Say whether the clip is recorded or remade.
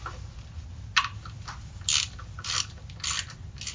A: recorded